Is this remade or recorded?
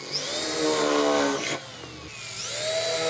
recorded